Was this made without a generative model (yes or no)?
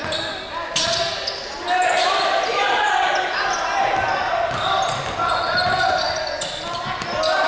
yes